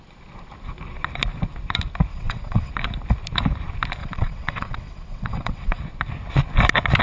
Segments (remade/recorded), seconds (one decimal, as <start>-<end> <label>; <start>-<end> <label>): 0.0-2.1 recorded; 2.1-2.7 remade; 2.7-4.0 recorded; 4.0-5.8 remade; 5.8-7.0 recorded